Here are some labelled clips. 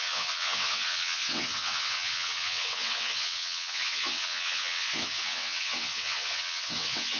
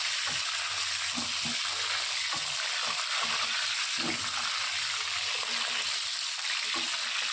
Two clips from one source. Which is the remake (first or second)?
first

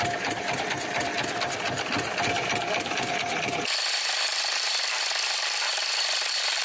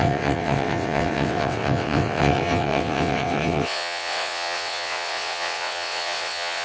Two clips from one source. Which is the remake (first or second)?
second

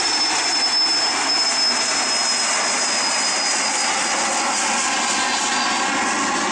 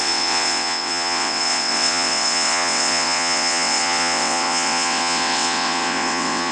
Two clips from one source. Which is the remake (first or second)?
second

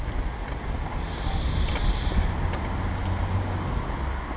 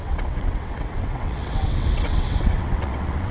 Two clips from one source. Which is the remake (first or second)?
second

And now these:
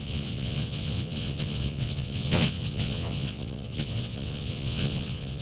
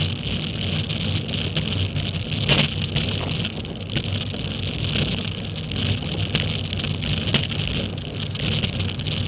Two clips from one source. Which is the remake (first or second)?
first